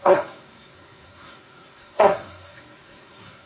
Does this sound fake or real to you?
fake